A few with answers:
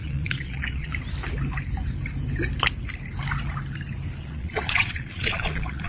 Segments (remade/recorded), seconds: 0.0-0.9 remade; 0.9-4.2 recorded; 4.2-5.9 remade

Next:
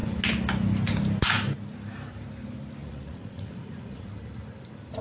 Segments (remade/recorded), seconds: 0.0-2.8 recorded; 2.8-4.1 remade; 4.1-5.0 recorded

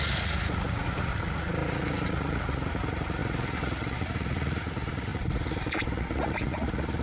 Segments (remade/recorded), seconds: 0.0-7.0 remade

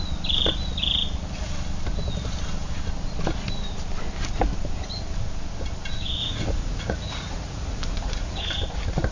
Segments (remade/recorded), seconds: 0.0-6.2 recorded; 6.2-8.4 remade; 8.4-9.1 recorded

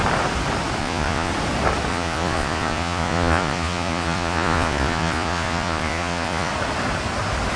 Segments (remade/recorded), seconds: 0.0-0.8 recorded; 0.8-1.3 remade; 1.3-1.9 recorded; 1.9-6.5 remade; 6.5-7.6 recorded

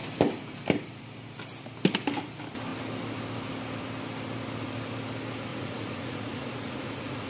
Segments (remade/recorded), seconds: 0.0-5.5 recorded; 5.5-7.3 remade